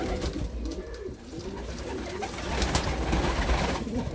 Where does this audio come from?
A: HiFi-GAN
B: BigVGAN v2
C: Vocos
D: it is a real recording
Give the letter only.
D